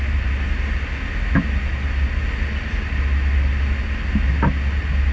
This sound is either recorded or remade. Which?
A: recorded